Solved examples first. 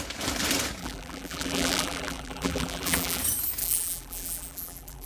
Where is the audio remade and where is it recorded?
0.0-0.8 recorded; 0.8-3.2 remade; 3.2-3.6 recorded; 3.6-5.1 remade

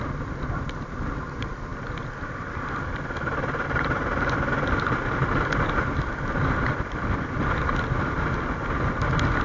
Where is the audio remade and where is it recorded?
0.0-9.4 recorded

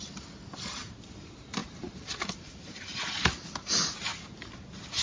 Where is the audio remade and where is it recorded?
0.0-1.6 recorded; 1.6-4.6 remade; 4.6-5.0 recorded